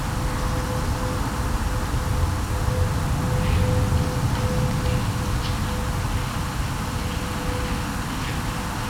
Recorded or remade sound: recorded